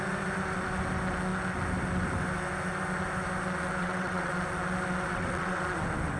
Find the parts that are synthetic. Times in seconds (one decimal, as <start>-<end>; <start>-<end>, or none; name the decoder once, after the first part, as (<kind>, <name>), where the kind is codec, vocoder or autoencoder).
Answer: 3.8-4.3 (vocoder, WaveNeXt); 5.1-5.6